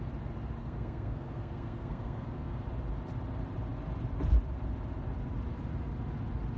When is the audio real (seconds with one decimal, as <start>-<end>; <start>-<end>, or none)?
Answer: 0.0-0.6; 2.6-6.6